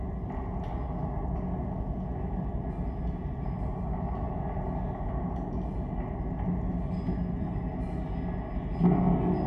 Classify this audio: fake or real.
real